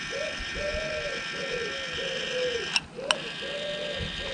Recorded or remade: recorded